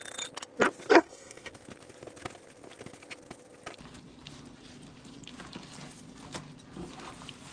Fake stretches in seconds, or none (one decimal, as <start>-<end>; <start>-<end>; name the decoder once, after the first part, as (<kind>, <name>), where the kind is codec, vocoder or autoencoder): 0.9-1.5 (codec, SNAC)